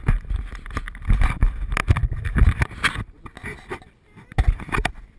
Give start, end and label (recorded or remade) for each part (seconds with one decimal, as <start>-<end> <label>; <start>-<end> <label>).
0.0-5.2 recorded

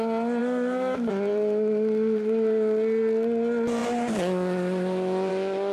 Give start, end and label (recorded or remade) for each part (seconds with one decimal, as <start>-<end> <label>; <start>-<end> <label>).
0.0-0.4 recorded; 0.4-1.1 remade; 1.1-5.7 recorded